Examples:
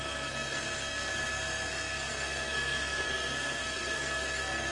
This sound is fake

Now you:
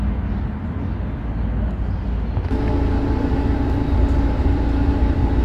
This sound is real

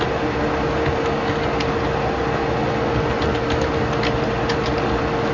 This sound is real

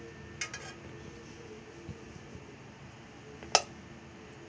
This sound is real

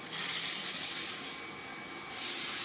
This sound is real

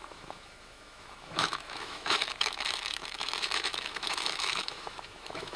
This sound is fake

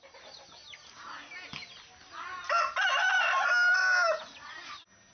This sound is real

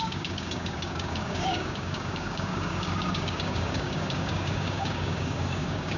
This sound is fake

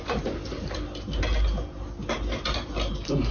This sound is real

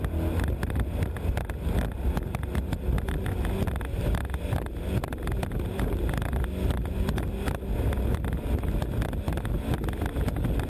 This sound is real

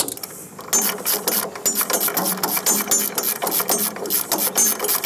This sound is real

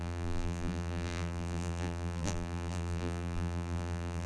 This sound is fake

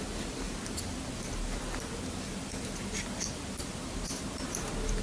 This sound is real